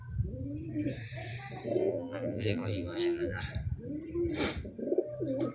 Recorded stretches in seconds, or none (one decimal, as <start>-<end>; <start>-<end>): 0.0-1.8; 3.4-5.5